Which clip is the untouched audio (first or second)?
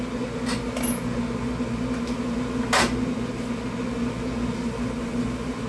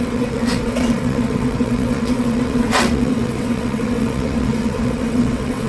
first